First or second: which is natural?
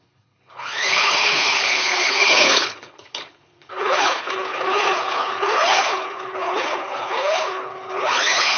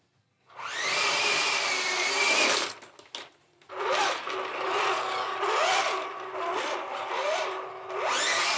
second